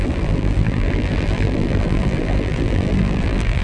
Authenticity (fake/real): fake